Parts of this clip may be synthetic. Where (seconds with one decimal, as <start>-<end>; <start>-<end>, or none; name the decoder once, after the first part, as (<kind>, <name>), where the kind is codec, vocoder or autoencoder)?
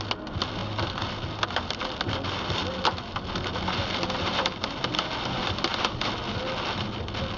none